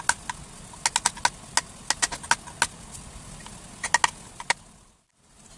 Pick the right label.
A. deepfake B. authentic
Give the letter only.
B